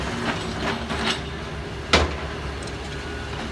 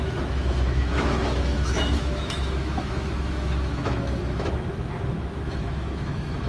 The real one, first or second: first